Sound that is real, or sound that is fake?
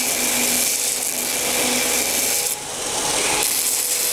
real